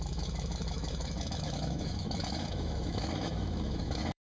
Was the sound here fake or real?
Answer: fake